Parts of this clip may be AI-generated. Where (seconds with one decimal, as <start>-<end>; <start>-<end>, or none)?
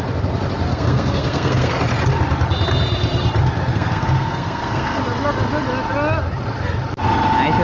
0.7-1.8; 3.7-5.0